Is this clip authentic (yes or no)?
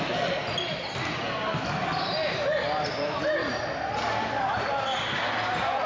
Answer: yes